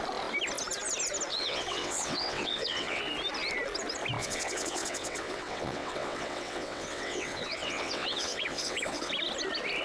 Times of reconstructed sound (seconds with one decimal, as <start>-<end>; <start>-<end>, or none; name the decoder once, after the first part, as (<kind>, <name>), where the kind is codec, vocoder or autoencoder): 1.3-3.0 (vocoder, WaveNeXt); 4.2-9.1